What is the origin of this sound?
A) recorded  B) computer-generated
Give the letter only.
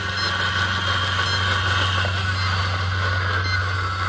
A